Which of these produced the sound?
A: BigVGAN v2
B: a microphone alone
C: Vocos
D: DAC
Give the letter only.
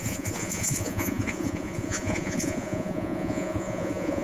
C